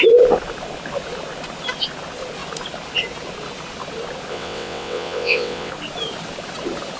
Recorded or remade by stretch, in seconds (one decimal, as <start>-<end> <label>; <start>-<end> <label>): 0.0-4.3 recorded; 4.3-5.7 remade; 5.7-7.0 recorded